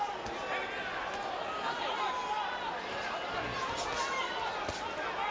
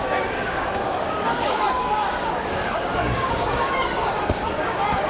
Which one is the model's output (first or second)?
second